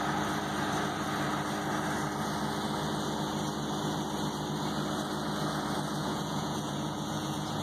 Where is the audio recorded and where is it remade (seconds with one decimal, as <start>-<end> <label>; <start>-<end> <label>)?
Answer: 0.0-6.0 recorded; 6.0-7.6 remade